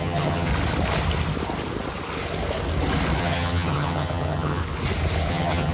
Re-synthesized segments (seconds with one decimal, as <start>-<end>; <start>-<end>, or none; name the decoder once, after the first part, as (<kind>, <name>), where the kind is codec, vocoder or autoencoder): 0.0-0.5 (vocoder, HiFi-GAN); 3.2-4.6; 5.3-5.7